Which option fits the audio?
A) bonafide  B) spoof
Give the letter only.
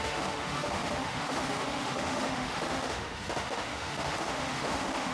B